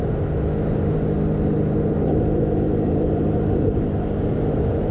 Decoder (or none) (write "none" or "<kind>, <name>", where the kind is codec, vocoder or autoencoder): none